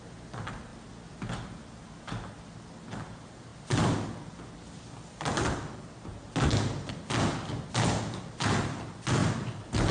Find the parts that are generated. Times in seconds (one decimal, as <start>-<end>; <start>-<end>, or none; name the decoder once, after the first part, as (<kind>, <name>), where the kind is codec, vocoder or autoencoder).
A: none